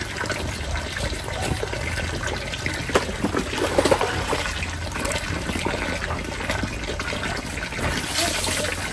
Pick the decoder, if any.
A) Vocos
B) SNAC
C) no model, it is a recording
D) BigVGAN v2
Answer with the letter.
C